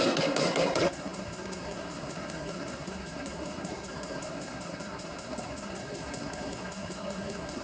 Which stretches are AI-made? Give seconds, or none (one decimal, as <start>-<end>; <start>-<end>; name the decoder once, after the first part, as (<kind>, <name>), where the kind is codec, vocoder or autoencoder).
0.0-7.6 (codec, SNAC)